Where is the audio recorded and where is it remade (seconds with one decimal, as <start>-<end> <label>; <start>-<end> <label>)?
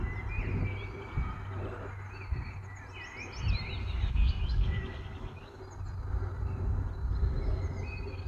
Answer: 0.0-3.8 recorded; 3.8-5.6 remade; 5.6-8.3 recorded